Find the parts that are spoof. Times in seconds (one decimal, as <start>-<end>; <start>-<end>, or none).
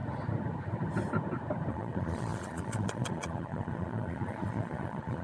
1.7-5.2